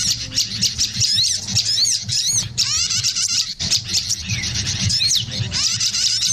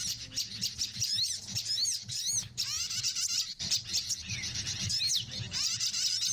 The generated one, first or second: first